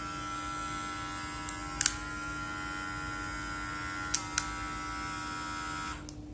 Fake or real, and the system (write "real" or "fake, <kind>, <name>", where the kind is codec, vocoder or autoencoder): real